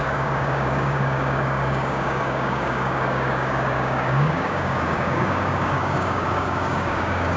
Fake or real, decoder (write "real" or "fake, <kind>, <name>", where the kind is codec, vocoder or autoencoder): fake, codec, DAC